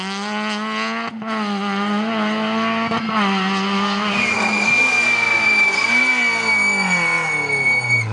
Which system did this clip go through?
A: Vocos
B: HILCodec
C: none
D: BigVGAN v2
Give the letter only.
C